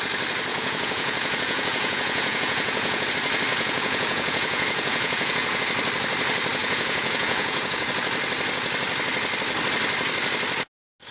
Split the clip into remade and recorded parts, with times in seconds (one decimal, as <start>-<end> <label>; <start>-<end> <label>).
0.0-0.5 recorded; 0.5-3.1 remade; 3.1-3.5 recorded; 3.5-5.6 remade; 5.6-6.6 recorded; 6.6-7.9 remade; 7.9-11.1 recorded